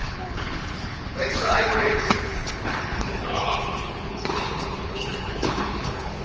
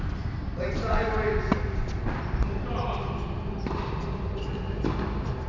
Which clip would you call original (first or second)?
second